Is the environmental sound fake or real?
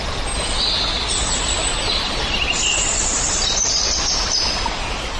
real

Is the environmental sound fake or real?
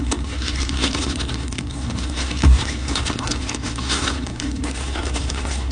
fake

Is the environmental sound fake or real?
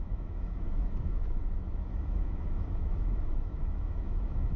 fake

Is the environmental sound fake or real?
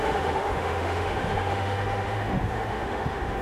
fake